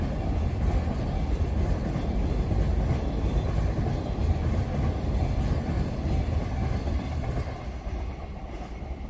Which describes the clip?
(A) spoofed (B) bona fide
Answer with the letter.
B